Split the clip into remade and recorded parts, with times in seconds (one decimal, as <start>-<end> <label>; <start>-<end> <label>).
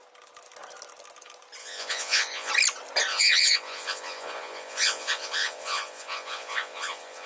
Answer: 0.0-1.6 recorded; 1.6-2.5 remade; 2.5-3.1 recorded; 3.1-7.3 remade